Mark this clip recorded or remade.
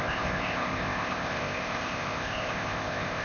remade